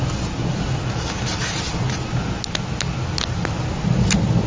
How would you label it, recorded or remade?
recorded